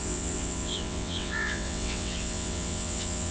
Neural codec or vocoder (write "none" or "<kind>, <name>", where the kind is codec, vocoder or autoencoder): vocoder, WaveNeXt